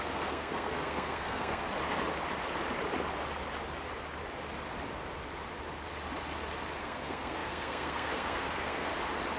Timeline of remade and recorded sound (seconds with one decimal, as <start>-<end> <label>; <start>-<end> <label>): 0.0-1.6 remade; 1.6-6.8 recorded; 6.8-8.9 remade; 8.9-9.4 recorded